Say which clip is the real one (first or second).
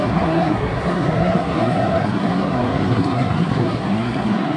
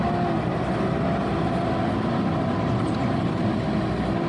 second